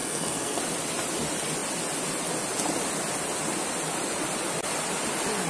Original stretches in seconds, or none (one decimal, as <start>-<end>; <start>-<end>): 0.6-5.5